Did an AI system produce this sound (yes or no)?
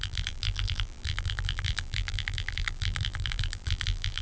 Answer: yes